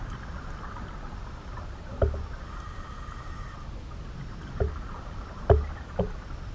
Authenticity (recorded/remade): recorded